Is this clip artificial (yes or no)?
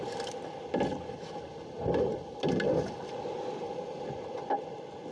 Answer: no